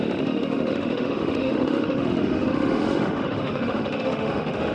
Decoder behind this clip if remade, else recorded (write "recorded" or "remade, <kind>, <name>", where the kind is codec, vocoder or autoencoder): remade, autoencoder, DAC-VAE